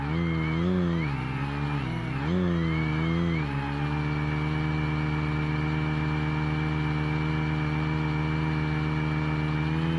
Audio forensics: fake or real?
real